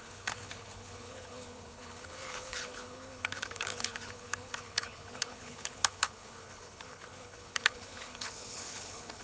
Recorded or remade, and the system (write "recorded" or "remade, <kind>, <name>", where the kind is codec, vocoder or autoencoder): remade, codec, HILCodec